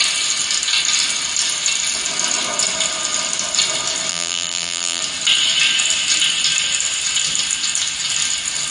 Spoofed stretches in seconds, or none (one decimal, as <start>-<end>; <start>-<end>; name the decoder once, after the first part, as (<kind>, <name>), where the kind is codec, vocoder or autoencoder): 4.1-5.0 (vocoder, BigVGAN v2)